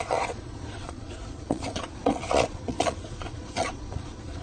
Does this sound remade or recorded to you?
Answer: remade